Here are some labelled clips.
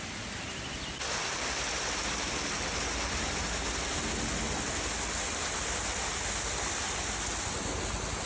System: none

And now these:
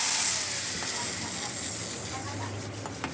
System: none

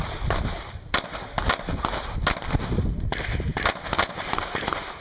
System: none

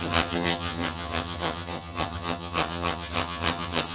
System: vocoder, HiFi-GAN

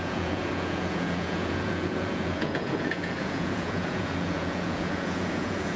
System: vocoder, Vocos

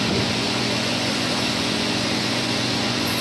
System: vocoder, Vocos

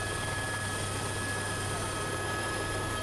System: none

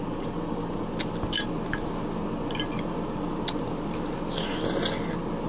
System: none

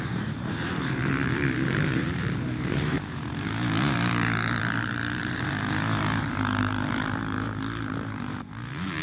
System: vocoder, BigVGAN v2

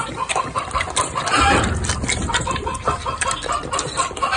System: vocoder, BigVGAN v2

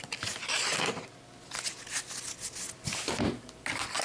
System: none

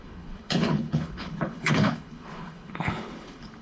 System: codec, HILCodec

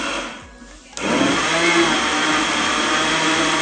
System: none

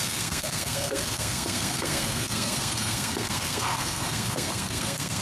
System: codec, SNAC